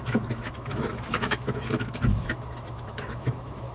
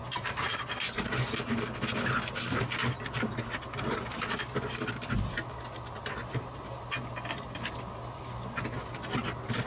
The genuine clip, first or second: second